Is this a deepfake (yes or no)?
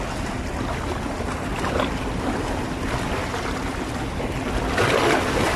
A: no